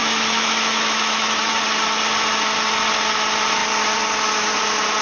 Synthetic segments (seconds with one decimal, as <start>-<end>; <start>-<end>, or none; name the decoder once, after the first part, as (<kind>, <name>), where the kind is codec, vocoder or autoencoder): 0.0-1.5 (autoencoder, DAC-VAE)